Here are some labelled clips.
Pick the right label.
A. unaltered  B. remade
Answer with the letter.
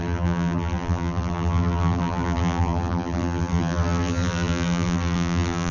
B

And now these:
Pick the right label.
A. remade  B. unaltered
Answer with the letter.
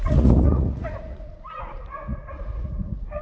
A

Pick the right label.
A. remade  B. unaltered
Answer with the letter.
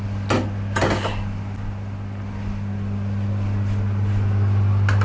B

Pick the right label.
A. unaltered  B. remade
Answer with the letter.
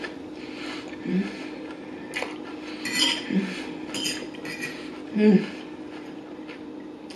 A